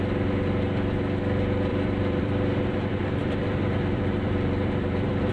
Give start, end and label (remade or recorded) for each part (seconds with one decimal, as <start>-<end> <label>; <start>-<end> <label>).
0.0-1.7 recorded; 1.7-2.7 remade; 2.7-3.2 recorded; 3.2-5.3 remade